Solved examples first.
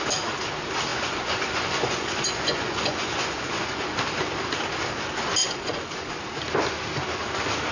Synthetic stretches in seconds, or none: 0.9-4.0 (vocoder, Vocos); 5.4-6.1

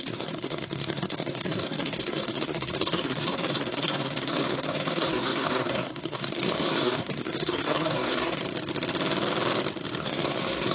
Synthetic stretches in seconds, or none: 0.0-8.4 (codec, SNAC); 10.0-10.7

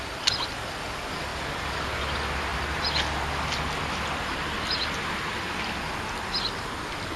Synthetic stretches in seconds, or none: none

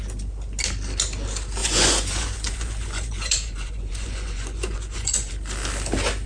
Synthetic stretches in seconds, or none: 1.6-5.3 (vocoder, Vocos)

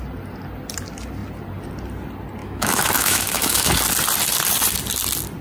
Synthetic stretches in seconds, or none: 2.4-3.7 (autoencoder, DAC-VAE)

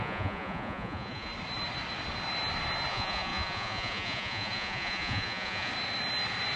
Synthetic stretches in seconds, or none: 0.0-1.3 (vocoder, Vocos); 2.9-5.7